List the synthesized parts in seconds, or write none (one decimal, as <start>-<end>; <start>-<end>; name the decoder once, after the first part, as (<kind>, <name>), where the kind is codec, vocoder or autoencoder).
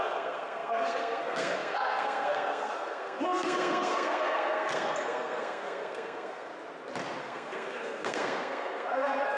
0.0-6.5 (codec, SNAC); 7.2-9.4